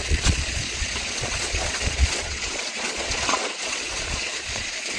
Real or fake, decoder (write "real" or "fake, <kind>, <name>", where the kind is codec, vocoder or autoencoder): fake, vocoder, Vocos